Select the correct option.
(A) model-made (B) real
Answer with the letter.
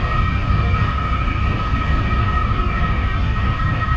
A